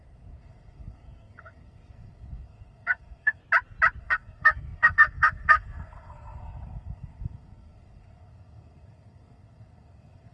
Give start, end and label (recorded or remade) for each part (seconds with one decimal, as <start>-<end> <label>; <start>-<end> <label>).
0.0-3.4 remade; 3.4-4.0 recorded; 4.0-10.3 remade

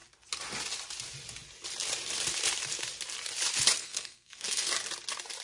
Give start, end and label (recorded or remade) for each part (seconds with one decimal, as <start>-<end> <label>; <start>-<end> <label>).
0.0-3.8 recorded; 3.8-4.7 remade; 4.7-5.4 recorded

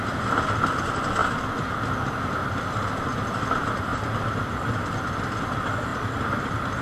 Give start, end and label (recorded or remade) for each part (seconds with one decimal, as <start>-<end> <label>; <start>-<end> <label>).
0.0-6.8 recorded

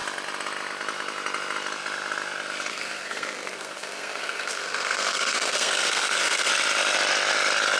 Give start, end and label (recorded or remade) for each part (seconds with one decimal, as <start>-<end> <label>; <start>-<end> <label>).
0.0-2.7 recorded; 2.7-6.5 remade; 6.5-7.8 recorded

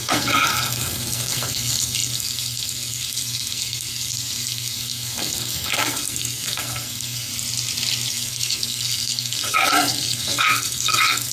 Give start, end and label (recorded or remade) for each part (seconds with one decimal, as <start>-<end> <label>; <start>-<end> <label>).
0.0-7.3 remade; 7.3-8.1 recorded; 8.1-11.3 remade

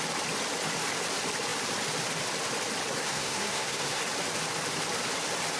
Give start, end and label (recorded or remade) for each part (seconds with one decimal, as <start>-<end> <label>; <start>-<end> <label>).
0.0-2.9 recorded; 2.9-4.0 remade; 4.0-5.6 recorded

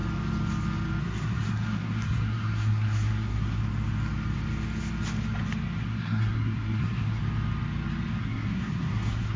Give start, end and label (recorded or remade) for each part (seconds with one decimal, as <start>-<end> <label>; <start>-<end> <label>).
0.0-1.0 recorded; 1.0-3.6 remade; 3.6-5.8 recorded; 5.8-7.2 remade; 7.2-8.2 recorded; 8.2-9.4 remade

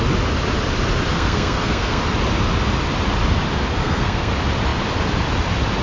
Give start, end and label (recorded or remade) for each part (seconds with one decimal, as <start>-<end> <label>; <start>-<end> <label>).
0.0-1.1 recorded; 1.1-2.0 remade; 2.0-3.8 recorded; 3.8-4.3 remade; 4.3-5.8 recorded